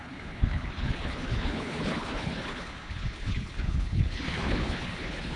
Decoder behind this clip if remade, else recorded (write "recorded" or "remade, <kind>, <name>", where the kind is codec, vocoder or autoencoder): remade, codec, HILCodec